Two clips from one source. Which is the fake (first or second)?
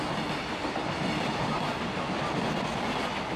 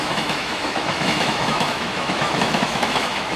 second